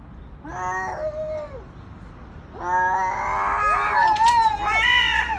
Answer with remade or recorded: recorded